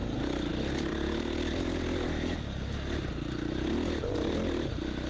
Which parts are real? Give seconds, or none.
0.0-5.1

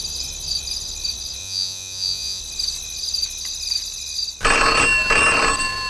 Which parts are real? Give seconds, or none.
0.0-1.4; 2.4-5.9

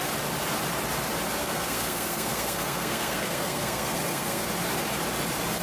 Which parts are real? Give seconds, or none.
0.0-1.4; 4.5-5.6

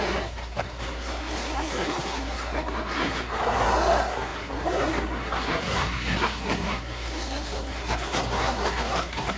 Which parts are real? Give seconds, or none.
none